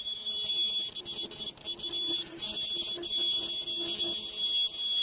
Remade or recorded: recorded